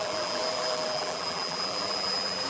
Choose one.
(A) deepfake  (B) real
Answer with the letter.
A